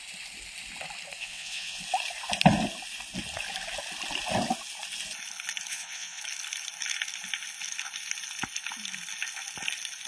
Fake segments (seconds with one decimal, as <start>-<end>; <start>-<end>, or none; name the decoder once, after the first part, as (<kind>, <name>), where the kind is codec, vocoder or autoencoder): 1.2-1.8 (vocoder, WaveNeXt); 5.7-6.2